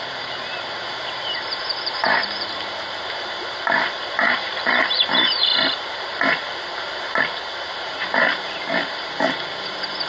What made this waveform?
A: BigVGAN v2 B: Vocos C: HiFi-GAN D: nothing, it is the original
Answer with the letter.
A